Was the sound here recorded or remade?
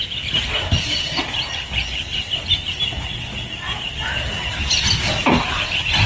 recorded